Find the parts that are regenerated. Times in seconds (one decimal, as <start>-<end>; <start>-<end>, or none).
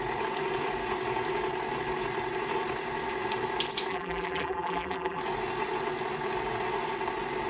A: 3.9-5.2